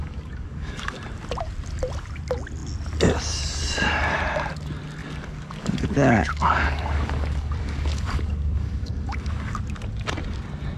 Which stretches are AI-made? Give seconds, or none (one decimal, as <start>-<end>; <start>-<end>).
0.0-1.0; 5.0-9.6